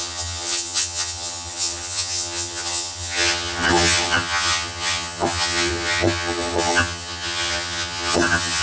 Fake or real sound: fake